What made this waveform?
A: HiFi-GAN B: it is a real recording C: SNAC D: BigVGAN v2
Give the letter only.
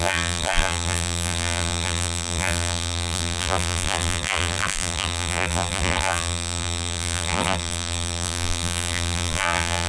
D